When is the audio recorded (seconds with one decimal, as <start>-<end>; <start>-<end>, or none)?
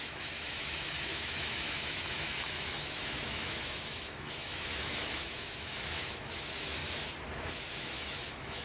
6.8-7.7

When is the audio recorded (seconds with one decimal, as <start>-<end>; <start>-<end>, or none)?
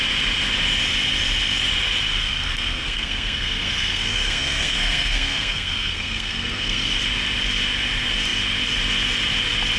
0.0-2.2; 6.9-9.8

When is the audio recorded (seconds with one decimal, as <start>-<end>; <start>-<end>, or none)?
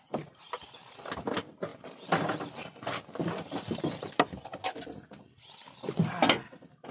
0.0-6.9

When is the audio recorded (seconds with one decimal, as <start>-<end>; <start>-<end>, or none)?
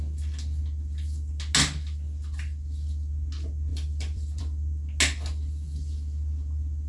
0.0-3.7; 4.4-6.9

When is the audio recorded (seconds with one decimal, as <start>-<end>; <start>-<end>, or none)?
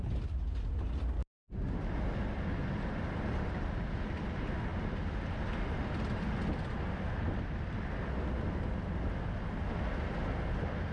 0.0-10.9